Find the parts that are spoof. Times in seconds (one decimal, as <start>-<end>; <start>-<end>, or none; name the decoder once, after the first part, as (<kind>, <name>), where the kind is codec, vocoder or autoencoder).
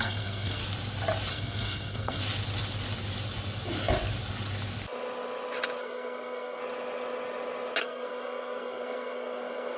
0.0-0.6 (codec, SNAC); 1.3-2.2; 5.8-6.6; 7.8-9.8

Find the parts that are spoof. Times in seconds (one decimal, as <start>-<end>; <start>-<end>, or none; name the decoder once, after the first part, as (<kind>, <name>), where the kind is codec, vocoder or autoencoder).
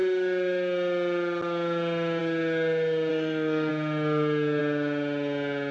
3.1-3.7 (codec, SNAC)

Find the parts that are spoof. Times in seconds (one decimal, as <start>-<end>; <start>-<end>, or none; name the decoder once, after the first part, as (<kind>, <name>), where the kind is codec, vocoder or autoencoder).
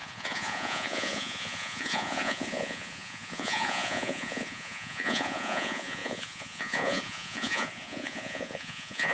0.0-9.1 (vocoder, Vocos)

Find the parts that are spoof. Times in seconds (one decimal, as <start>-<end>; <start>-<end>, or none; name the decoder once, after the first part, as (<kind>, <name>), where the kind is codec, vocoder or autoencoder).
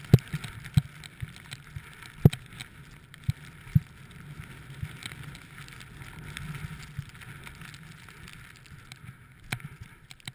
none